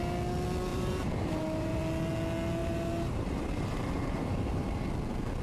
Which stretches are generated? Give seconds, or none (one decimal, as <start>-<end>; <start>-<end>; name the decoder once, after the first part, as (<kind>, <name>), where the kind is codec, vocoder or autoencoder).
0.7-1.8 (vocoder, BigVGAN v2); 2.6-4.8